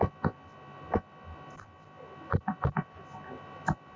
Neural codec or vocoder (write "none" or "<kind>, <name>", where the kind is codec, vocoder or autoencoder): none